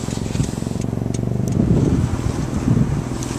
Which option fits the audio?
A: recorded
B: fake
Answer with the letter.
A